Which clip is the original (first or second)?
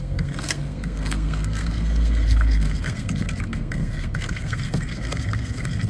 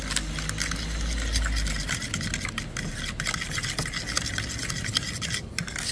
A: second